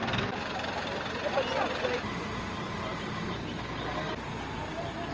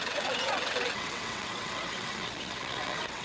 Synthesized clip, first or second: second